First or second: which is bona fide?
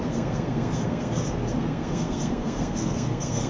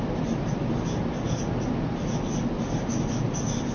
second